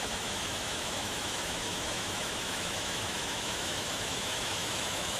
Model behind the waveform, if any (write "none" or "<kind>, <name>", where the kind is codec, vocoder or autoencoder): autoencoder, DAC-VAE